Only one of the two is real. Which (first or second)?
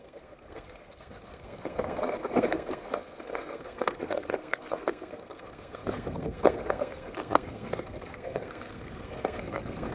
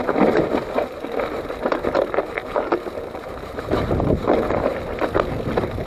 second